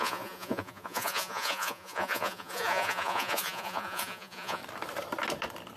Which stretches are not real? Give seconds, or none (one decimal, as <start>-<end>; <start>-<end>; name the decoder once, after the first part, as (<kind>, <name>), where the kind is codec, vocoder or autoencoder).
0.0-4.6 (vocoder, Vocos)